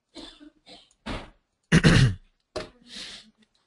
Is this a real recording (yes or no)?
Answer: yes